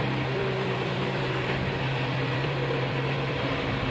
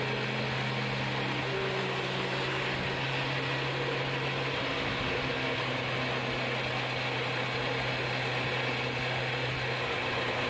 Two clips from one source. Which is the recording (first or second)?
second